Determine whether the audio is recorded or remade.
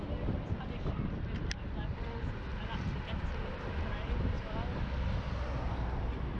recorded